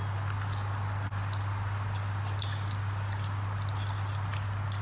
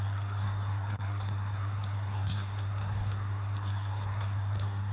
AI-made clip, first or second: second